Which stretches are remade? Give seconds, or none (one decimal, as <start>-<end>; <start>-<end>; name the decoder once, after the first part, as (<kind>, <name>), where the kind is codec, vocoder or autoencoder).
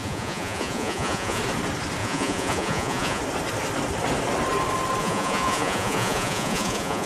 0.0-1.4 (vocoder, Vocos); 2.0-3.2; 5.0-7.1